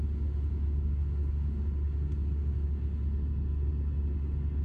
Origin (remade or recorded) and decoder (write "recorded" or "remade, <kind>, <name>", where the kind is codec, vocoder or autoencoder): recorded